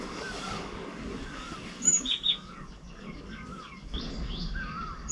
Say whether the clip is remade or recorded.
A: remade